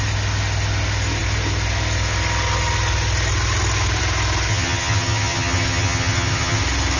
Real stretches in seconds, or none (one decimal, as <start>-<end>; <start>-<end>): 0.0-4.5; 6.6-7.0